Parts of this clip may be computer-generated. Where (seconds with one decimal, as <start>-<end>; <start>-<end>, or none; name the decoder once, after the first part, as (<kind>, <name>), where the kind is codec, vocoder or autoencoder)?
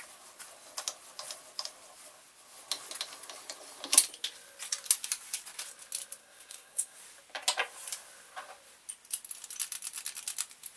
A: 6.2-7.0 (codec, SNAC)